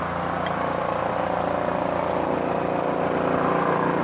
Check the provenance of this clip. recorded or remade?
recorded